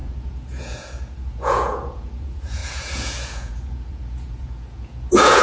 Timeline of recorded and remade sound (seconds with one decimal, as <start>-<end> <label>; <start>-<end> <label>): 0.0-5.4 remade